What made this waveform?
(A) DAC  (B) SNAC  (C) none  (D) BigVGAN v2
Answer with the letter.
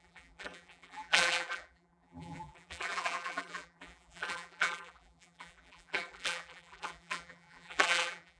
D